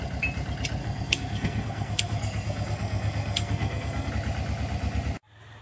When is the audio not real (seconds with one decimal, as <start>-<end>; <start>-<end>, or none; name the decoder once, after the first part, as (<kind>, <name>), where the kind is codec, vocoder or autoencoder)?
0.8-4.1 (codec, SNAC)